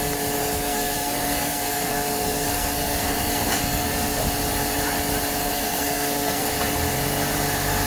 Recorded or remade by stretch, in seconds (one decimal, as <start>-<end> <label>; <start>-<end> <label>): 0.0-0.4 recorded; 0.4-4.2 remade; 4.2-5.4 recorded; 5.4-6.5 remade; 6.5-7.9 recorded